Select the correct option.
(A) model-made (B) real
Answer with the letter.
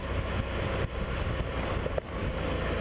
B